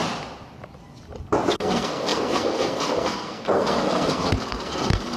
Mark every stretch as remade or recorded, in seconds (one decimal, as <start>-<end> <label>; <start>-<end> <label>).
0.0-1.5 recorded; 1.5-5.2 remade